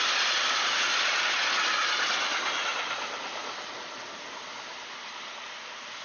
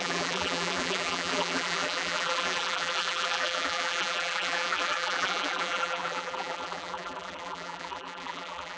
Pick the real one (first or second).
first